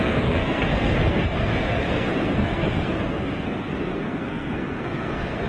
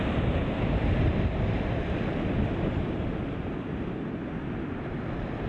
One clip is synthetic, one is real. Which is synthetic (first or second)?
first